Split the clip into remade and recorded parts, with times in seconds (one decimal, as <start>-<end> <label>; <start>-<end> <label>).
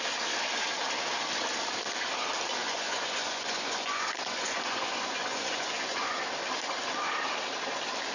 0.0-2.6 recorded; 2.6-6.2 remade; 6.2-8.1 recorded